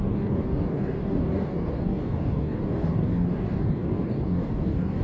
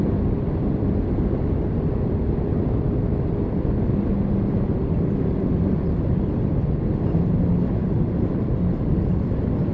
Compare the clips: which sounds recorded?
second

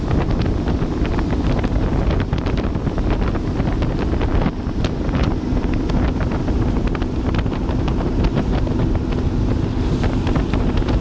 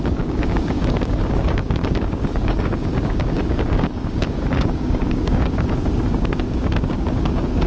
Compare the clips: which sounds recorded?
first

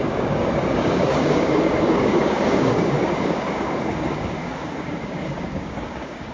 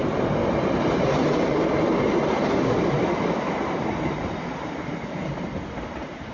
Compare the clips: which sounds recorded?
second